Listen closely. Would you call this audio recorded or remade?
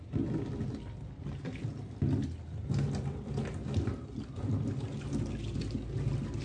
recorded